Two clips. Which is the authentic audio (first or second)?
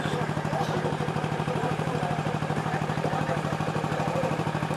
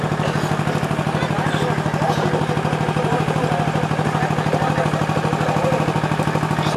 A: second